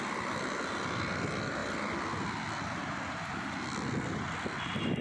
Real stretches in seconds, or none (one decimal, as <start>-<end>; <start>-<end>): 0.0-5.0

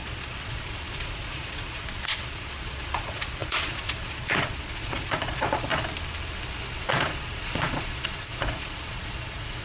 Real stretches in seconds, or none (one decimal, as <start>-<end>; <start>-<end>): 5.7-6.9

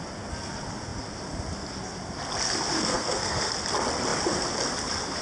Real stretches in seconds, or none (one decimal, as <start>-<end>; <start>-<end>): 0.0-2.7; 3.5-5.2

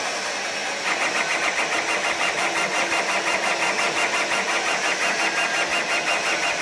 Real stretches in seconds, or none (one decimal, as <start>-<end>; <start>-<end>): 0.0-6.6

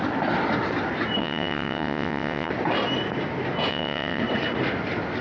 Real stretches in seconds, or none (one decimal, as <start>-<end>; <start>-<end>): 0.0-1.2; 2.5-3.7; 4.2-5.2

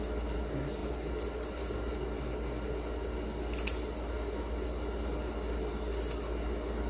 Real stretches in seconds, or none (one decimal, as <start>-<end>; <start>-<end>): 0.0-6.9

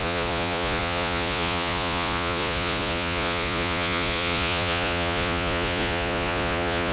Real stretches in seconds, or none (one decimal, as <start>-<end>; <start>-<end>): none

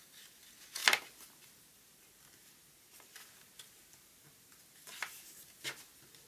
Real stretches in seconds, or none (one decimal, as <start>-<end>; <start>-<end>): 0.0-6.3